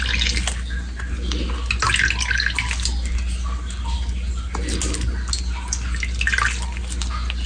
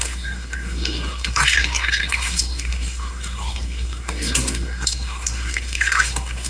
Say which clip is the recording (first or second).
first